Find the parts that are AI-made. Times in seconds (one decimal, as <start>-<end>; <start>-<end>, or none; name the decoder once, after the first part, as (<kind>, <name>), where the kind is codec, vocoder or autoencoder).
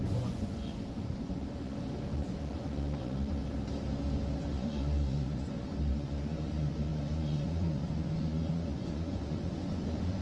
0.0-3.4 (vocoder, Vocos); 4.5-10.2